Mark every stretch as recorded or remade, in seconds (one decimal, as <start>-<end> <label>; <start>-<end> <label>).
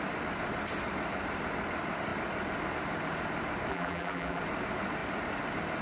0.0-3.7 recorded; 3.7-4.4 remade; 4.4-5.8 recorded